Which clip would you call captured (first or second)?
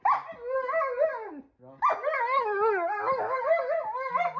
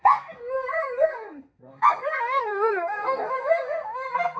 first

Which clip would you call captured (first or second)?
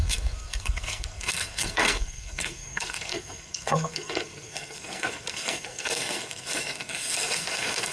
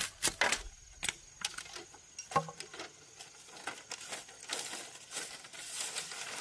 second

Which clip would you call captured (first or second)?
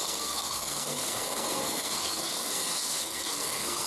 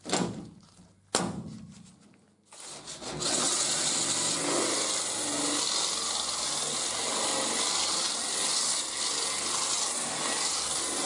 second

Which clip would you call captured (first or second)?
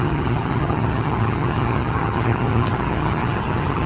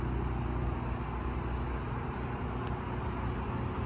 second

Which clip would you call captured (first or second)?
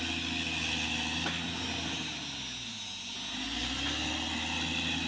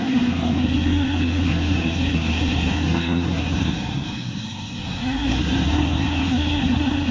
first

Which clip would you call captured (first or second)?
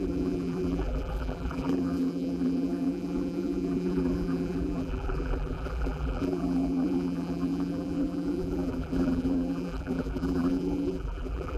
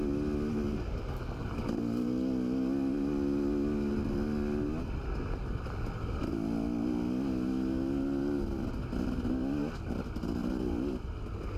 second